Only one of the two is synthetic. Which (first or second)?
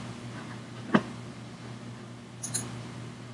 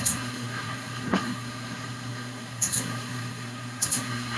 second